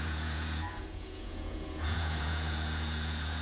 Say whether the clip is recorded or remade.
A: remade